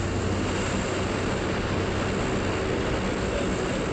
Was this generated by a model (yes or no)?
no